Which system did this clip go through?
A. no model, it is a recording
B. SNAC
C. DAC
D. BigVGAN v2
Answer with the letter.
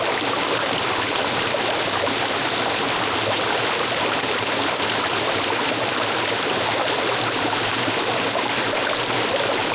A